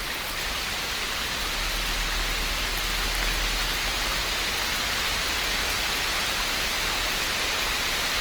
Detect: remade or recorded recorded